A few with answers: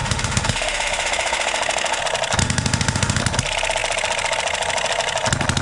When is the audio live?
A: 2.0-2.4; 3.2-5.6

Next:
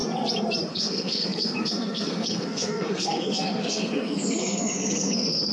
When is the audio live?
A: 0.0-0.7

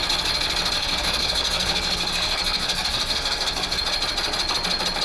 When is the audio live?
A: 0.0-0.8; 3.8-5.0

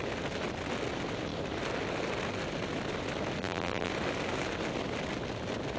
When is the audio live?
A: 0.0-3.4; 3.9-5.8

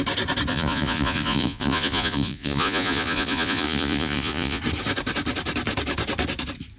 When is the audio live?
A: 0.0-0.5; 4.6-6.8